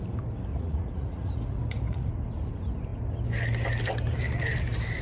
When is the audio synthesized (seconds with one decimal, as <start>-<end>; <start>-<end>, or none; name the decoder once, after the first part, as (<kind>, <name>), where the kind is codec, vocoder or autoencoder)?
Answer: 0.5-2.1 (vocoder, Vocos)